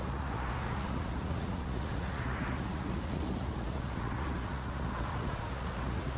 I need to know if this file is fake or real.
fake